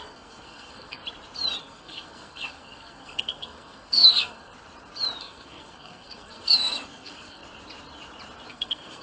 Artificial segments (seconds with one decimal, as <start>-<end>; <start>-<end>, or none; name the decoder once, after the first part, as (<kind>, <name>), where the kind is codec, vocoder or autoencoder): 0.0-1.0 (codec, SNAC); 1.6-4.5; 5.2-7.4; 8.5-9.0